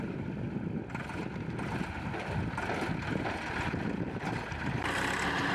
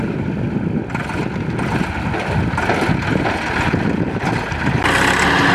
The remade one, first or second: first